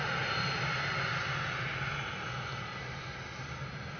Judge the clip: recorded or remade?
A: recorded